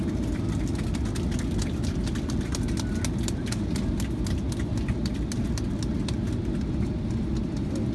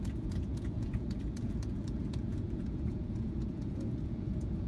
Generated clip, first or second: second